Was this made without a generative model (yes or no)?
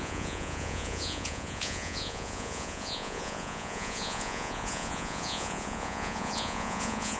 no